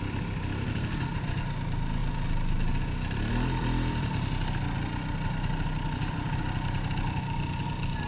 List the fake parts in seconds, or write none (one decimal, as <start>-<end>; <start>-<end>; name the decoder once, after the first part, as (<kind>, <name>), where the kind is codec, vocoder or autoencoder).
none